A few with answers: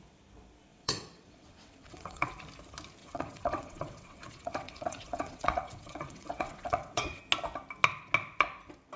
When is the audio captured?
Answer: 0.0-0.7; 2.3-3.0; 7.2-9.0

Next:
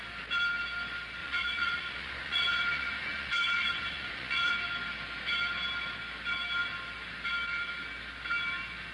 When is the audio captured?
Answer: 0.0-1.2; 4.5-8.9

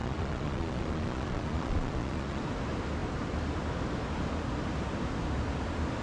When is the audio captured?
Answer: 2.4-6.0

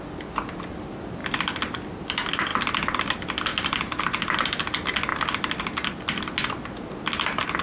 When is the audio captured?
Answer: 0.0-7.6

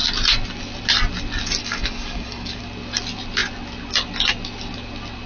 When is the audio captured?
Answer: 0.0-1.6; 2.6-5.3

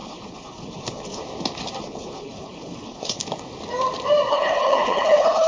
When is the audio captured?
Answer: 1.2-1.8; 3.2-4.3

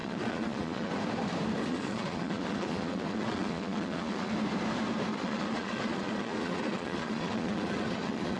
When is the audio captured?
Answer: 0.9-1.7; 4.3-5.1

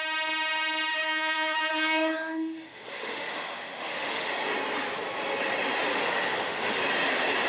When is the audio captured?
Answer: 0.0-0.9; 4.3-5.9; 6.8-7.5